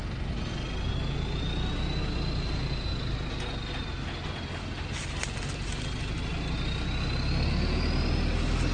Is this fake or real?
real